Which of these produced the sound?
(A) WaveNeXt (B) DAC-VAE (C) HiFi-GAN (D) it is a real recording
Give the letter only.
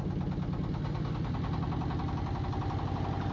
D